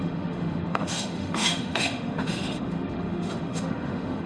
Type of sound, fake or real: fake